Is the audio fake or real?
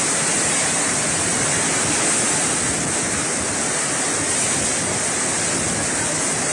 real